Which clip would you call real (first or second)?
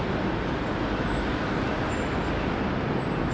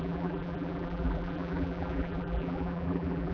first